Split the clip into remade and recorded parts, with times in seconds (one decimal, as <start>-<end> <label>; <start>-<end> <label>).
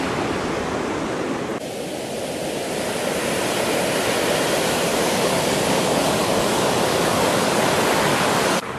0.0-4.9 recorded; 4.9-7.6 remade; 7.6-8.1 recorded; 8.1-8.8 remade